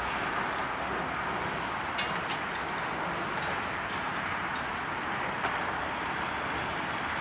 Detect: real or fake real